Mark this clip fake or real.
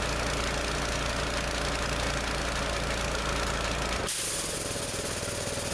real